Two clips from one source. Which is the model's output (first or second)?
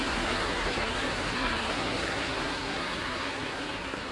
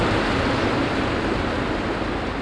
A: first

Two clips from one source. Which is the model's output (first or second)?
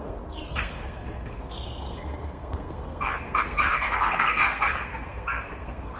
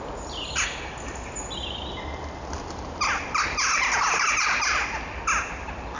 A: first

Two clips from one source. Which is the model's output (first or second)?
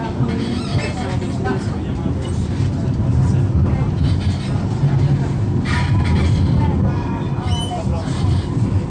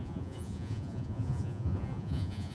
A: second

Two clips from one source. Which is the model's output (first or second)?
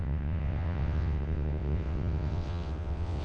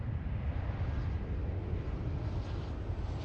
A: first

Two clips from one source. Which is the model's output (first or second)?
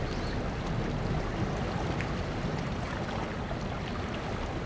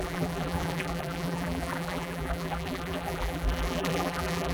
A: second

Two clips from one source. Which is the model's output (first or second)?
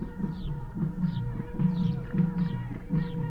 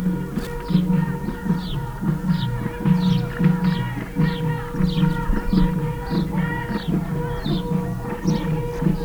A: first